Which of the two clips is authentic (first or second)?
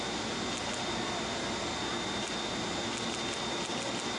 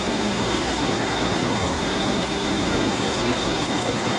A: first